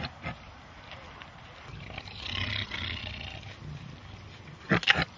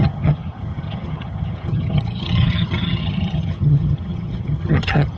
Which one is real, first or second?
first